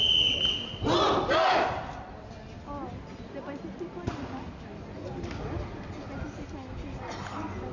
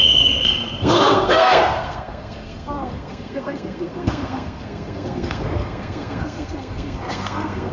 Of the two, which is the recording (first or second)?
first